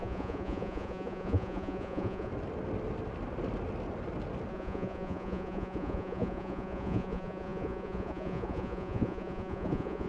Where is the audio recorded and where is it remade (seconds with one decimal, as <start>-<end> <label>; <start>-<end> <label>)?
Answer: 0.0-2.3 remade; 2.3-4.5 recorded; 4.5-10.1 remade